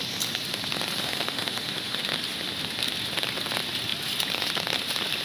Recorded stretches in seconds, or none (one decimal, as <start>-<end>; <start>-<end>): 0.0-1.0; 2.0-5.2